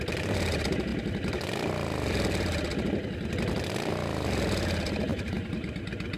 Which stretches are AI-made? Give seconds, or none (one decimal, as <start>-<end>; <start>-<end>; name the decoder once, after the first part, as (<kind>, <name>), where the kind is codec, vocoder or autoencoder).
5.1-5.8 (vocoder, BigVGAN v2)